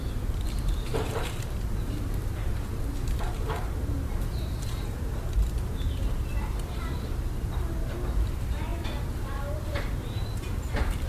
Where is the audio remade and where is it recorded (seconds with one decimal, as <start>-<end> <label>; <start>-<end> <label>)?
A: 0.0-0.9 recorded; 0.9-4.9 remade; 4.9-11.1 recorded